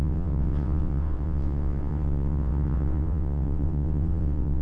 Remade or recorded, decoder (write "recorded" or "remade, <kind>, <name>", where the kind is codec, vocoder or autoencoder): remade, vocoder, WaveNeXt